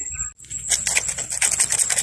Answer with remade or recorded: recorded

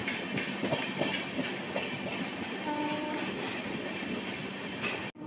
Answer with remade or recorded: recorded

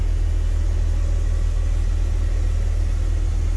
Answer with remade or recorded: recorded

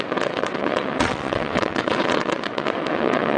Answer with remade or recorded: remade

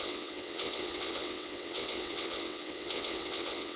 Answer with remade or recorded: remade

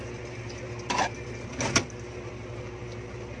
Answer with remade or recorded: recorded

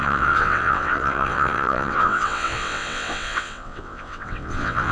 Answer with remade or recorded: remade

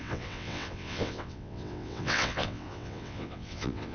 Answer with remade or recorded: remade